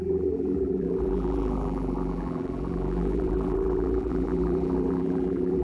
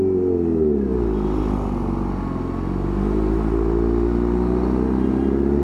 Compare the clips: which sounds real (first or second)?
second